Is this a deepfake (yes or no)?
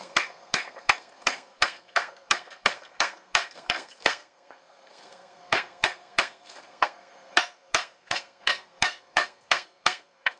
yes